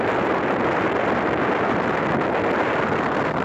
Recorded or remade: recorded